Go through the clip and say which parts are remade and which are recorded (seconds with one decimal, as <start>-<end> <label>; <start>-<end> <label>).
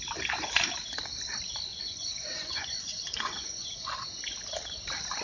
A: 0.0-1.7 recorded; 1.7-4.2 remade; 4.2-5.2 recorded